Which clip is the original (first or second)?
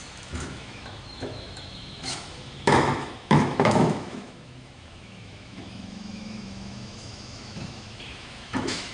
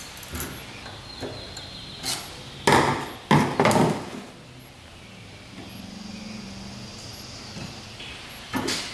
second